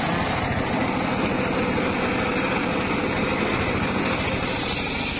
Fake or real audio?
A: real